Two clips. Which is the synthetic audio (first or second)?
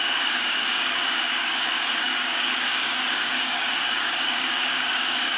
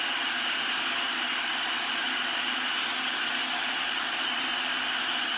first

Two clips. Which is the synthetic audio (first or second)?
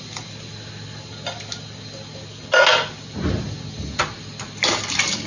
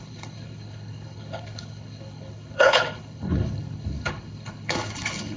second